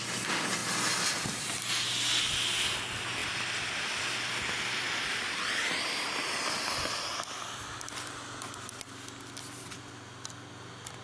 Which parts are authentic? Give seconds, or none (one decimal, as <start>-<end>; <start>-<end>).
0.0-11.0